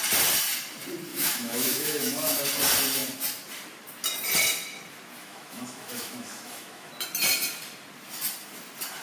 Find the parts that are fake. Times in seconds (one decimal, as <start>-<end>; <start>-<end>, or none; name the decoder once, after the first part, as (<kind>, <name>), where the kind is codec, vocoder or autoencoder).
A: 1.1-2.4 (autoencoder, DAC-VAE); 5.2-6.9